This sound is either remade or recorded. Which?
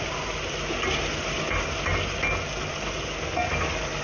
recorded